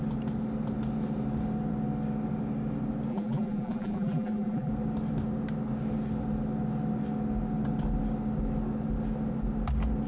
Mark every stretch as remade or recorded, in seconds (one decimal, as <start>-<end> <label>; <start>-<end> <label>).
0.0-3.1 recorded; 3.1-4.7 remade; 4.7-10.1 recorded